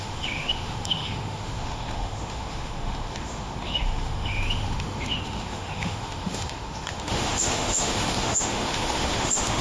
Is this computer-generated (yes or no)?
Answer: yes